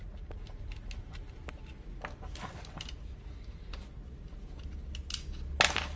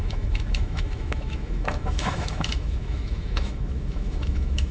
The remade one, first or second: second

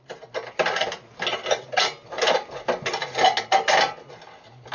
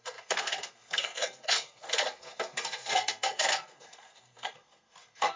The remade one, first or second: second